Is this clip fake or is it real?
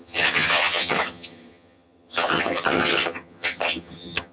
fake